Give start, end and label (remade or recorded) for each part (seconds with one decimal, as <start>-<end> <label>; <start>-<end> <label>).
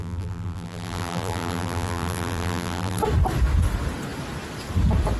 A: 0.0-3.0 remade; 3.0-5.2 recorded